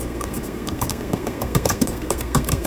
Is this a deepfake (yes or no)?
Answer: yes